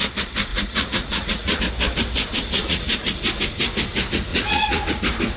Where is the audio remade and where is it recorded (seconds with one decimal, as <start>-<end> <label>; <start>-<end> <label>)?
0.0-0.5 recorded; 0.5-1.6 remade; 1.6-2.3 recorded; 2.3-3.1 remade; 3.1-4.3 recorded; 4.3-5.0 remade; 5.0-5.4 recorded